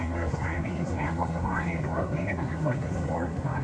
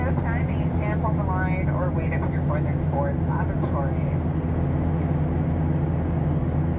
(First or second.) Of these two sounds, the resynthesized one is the first